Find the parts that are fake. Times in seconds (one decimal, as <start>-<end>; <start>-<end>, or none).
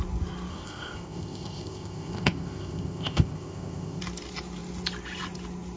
0.5-4.0